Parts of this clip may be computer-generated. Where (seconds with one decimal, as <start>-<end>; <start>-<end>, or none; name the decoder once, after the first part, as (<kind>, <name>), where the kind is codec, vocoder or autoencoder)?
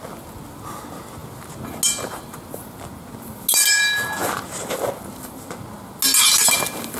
none